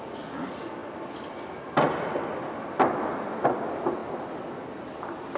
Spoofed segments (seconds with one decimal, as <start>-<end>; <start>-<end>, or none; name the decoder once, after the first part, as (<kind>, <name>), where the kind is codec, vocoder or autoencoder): none